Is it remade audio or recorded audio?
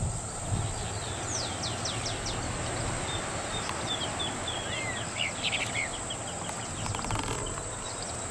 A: recorded